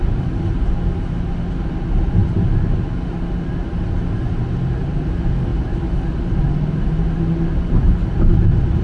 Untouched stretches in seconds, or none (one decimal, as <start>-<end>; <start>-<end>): 0.0-8.8